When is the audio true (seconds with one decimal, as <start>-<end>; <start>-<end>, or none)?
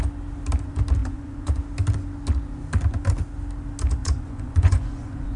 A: 0.0-1.0; 1.6-4.0